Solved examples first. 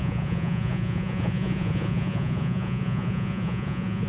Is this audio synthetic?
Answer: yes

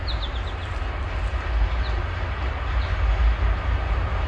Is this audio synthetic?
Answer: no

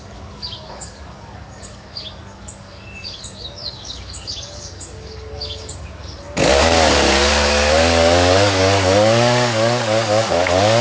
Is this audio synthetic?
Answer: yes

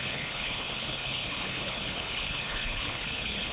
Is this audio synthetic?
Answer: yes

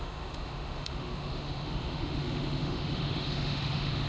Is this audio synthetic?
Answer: yes